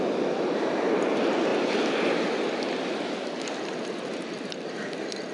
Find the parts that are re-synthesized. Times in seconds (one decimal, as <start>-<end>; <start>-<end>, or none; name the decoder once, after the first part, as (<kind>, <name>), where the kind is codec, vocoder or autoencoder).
none